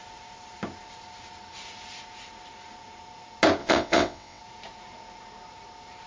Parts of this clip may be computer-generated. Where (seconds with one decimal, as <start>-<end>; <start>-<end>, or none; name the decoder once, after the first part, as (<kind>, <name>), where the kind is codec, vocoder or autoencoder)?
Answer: 3.6-4.4 (vocoder, WaveNeXt)